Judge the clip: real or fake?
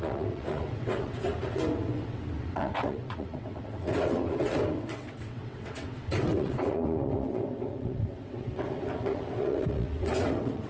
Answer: fake